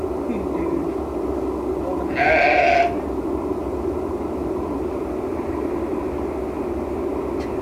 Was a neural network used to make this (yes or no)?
no